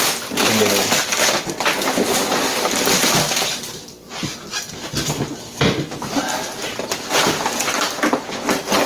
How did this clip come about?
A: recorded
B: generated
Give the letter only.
A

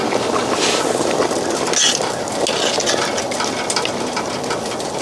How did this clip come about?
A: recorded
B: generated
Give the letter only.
A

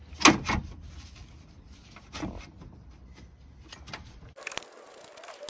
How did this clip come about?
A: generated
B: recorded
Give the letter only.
B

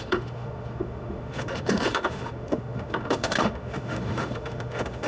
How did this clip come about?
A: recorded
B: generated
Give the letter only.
B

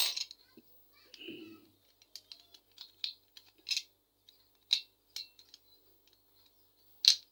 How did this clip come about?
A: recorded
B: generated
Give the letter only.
A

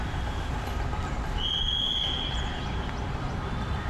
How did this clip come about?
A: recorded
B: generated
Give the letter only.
A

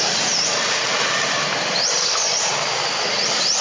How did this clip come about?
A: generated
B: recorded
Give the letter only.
B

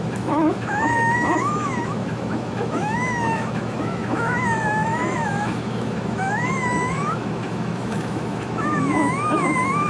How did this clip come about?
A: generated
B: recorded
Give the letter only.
A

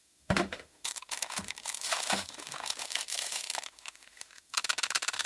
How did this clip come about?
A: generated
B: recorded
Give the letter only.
A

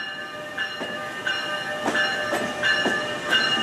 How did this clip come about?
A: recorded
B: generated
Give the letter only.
A